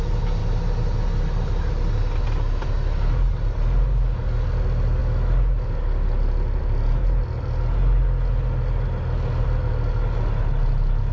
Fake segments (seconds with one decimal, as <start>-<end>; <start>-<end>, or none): none